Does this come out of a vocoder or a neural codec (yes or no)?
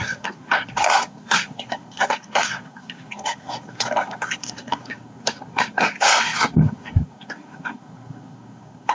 yes